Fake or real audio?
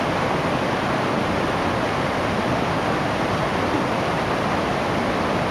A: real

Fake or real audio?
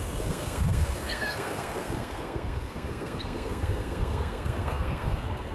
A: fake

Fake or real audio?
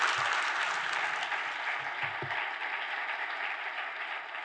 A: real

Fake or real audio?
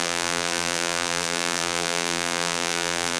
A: fake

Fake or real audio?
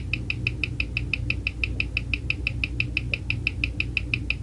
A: real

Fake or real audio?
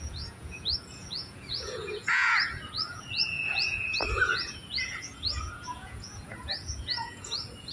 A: fake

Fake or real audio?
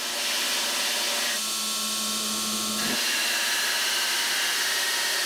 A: real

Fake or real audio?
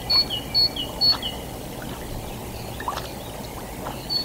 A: real